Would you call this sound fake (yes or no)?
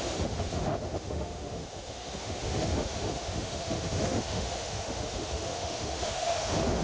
yes